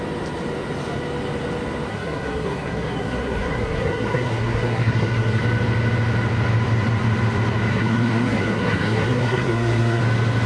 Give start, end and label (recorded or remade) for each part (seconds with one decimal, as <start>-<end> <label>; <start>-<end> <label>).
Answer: 0.0-1.9 recorded; 1.9-5.4 remade; 5.4-7.7 recorded; 7.7-10.0 remade; 10.0-10.5 recorded